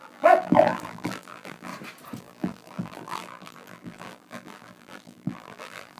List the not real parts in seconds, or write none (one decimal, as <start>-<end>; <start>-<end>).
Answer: 0.0-1.7; 2.2-6.0